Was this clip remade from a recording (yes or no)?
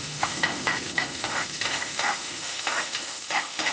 yes